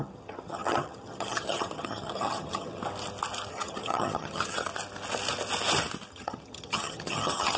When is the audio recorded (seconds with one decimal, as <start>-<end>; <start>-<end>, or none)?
2.8-3.5; 4.7-6.1

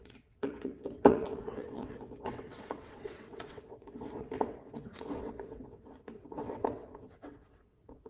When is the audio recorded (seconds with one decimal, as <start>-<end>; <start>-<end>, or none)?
none

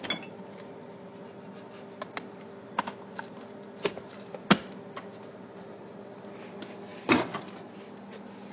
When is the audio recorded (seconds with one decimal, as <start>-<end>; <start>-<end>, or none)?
0.0-8.5

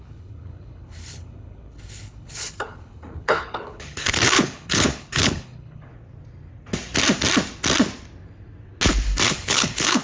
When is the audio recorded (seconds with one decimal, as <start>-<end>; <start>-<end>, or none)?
5.9-9.3

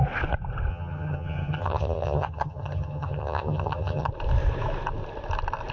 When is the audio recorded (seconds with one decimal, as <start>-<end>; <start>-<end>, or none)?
0.0-0.7; 4.1-5.7

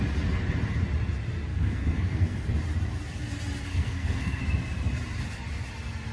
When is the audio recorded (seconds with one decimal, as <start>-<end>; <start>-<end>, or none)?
0.0-1.5; 2.5-3.7; 4.4-6.1

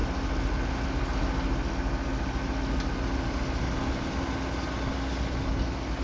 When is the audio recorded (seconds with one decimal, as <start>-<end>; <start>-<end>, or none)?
0.0-6.0

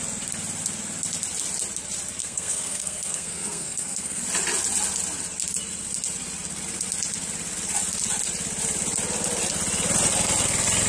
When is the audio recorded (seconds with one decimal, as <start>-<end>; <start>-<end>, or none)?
0.0-2.2; 4.2-10.9